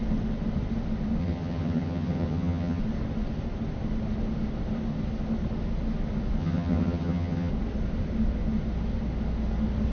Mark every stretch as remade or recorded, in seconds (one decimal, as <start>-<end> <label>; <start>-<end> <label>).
0.0-1.2 recorded; 1.2-2.8 remade; 2.8-6.4 recorded; 6.4-7.5 remade; 7.5-9.9 recorded